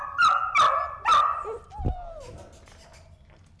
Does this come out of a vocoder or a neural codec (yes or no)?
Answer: no